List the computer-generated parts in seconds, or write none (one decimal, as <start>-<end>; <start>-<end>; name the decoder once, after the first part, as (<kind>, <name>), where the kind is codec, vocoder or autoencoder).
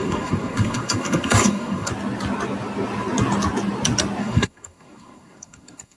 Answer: 0.0-1.9 (codec, SNAC); 4.2-6.0